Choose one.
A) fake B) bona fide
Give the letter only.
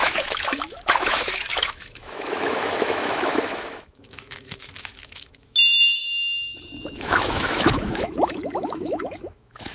A